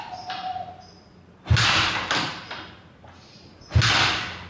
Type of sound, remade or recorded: recorded